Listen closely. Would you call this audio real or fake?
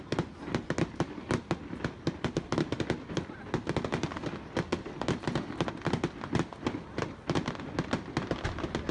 real